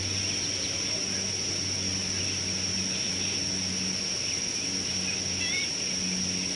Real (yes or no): yes